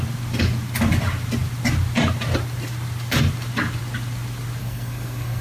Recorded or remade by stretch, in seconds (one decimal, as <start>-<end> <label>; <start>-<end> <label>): 0.0-4.6 recorded; 4.6-5.4 remade